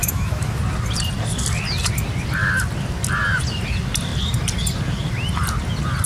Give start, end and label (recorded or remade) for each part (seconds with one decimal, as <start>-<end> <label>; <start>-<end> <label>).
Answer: 0.0-0.6 remade; 0.6-6.1 recorded